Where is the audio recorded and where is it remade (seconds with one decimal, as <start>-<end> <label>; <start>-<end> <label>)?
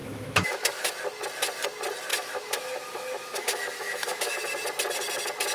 0.0-0.9 remade; 0.9-2.1 recorded; 2.1-4.4 remade; 4.4-5.5 recorded